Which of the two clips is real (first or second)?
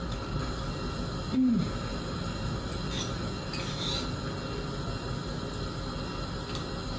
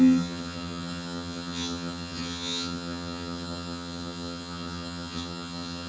first